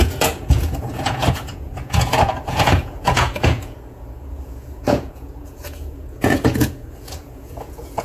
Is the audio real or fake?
fake